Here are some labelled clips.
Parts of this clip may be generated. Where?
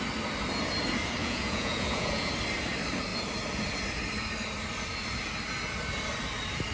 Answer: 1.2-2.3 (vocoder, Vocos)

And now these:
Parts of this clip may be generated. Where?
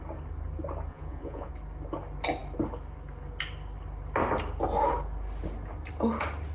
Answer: 0.9-1.5 (vocoder, Vocos)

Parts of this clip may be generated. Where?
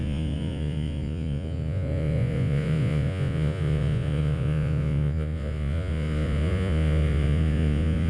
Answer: 0.0-8.1 (vocoder, Vocos)